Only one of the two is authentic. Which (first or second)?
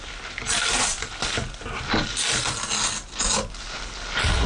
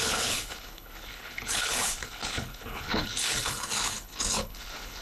first